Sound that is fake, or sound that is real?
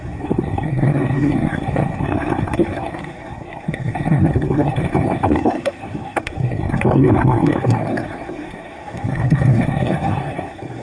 fake